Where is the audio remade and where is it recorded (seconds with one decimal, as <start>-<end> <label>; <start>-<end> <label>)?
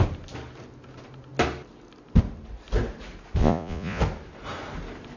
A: 0.0-3.4 recorded; 3.4-4.0 remade; 4.0-5.2 recorded